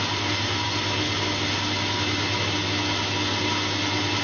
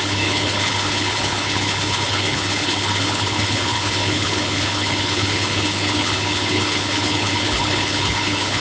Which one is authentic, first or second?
first